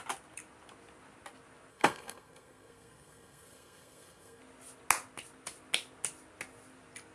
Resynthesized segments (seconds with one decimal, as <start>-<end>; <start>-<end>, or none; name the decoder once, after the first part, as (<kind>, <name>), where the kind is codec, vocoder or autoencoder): 1.7-4.4 (codec, SNAC)